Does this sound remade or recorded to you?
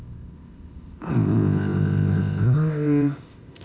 remade